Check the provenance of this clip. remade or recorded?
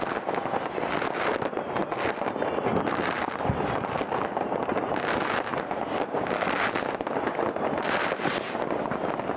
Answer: recorded